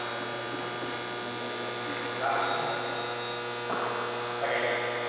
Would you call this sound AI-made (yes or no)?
no